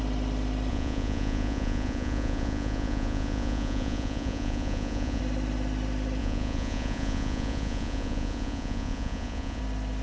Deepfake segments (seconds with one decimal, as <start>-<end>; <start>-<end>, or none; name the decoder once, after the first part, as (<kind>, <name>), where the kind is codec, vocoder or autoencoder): 0.7-5.2 (vocoder, Vocos); 6.2-9.6